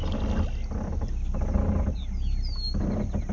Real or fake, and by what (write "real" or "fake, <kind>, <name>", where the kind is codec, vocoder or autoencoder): real